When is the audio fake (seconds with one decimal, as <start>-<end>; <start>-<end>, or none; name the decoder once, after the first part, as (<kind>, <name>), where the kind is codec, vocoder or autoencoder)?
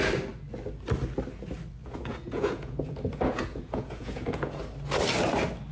1.8-4.6 (vocoder, Vocos)